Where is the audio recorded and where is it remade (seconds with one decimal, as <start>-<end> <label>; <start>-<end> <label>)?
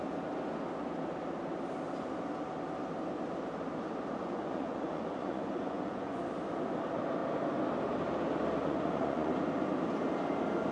0.0-4.2 recorded; 4.2-6.2 remade; 6.2-8.6 recorded; 8.6-9.3 remade; 9.3-10.7 recorded